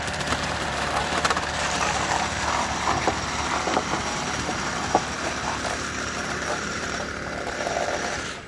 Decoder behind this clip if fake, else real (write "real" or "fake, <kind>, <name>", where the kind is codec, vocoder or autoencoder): fake, vocoder, BigVGAN v2